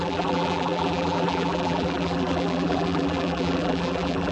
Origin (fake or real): fake